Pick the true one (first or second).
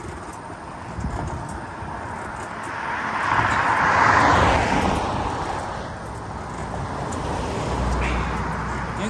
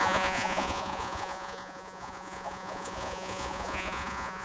first